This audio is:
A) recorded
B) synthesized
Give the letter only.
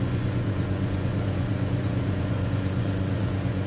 B